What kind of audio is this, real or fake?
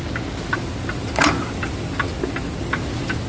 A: real